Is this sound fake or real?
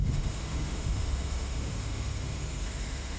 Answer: fake